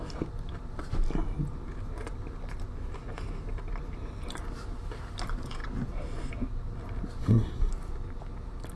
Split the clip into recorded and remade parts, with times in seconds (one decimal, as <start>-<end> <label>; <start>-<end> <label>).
0.0-7.2 recorded; 7.2-7.7 remade; 7.7-8.8 recorded